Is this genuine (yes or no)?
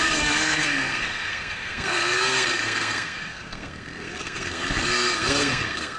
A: no